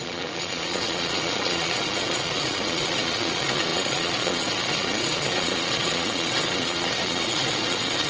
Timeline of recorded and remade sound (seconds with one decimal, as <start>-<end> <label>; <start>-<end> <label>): 0.0-8.1 remade